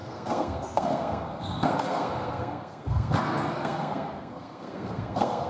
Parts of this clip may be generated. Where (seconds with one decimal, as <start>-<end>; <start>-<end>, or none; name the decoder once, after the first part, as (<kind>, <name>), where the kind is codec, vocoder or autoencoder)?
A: 0.0-5.5 (codec, SNAC)